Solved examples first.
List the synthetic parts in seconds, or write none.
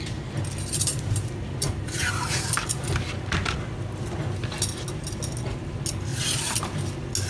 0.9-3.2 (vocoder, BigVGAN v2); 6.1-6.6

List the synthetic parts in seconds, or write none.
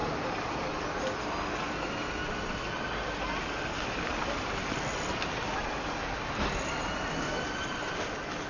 none